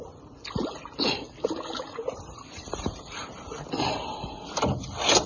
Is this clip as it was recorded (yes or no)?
yes